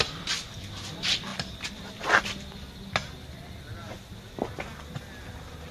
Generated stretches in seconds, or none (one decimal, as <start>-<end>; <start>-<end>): none